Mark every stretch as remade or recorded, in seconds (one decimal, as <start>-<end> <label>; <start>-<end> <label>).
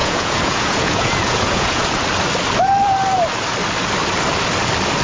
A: 0.0-2.0 remade; 2.0-5.0 recorded